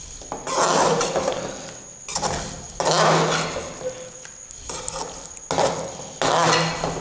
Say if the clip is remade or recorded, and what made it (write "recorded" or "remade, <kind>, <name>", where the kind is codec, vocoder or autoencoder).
recorded